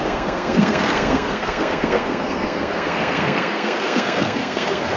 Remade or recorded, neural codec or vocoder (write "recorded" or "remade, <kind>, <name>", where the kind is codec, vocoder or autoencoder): remade, codec, SNAC